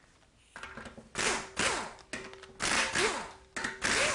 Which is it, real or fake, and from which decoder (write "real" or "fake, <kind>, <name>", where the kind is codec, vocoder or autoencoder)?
real